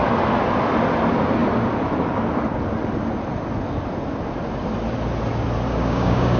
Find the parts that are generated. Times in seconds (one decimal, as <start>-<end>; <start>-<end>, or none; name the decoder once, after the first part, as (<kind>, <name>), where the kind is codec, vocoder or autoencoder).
5.7-6.4 (codec, DAC)